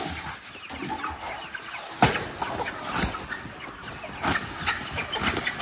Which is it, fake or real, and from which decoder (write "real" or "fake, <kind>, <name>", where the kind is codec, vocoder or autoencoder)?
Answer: real